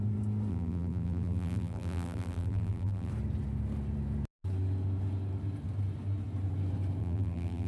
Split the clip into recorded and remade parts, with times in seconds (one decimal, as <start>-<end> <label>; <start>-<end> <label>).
0.0-0.5 recorded; 0.5-3.1 remade; 3.1-7.0 recorded; 7.0-7.7 remade